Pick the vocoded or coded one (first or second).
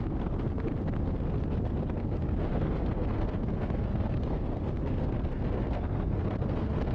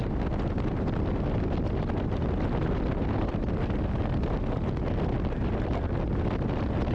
first